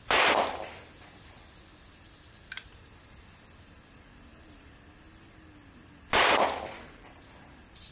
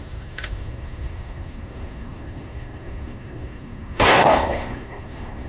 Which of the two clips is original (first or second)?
first